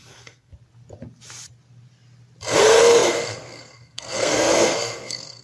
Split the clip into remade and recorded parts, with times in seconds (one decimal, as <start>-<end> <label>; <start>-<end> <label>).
0.0-0.5 remade; 0.5-2.6 recorded; 2.6-5.4 remade